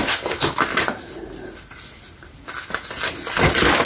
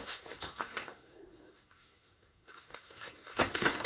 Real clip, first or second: first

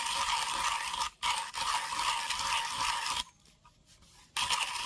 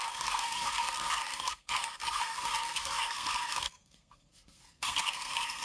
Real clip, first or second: first